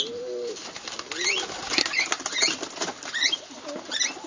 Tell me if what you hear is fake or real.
real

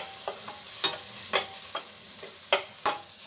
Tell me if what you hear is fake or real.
real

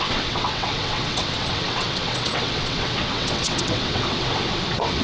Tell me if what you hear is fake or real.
fake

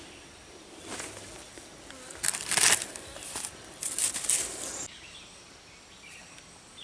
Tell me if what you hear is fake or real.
real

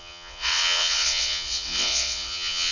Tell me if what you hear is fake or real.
fake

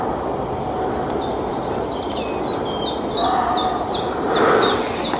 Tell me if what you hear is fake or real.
real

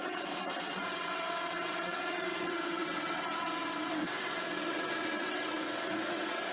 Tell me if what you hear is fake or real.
fake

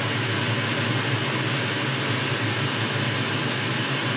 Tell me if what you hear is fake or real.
real